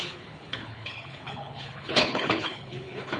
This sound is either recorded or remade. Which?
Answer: remade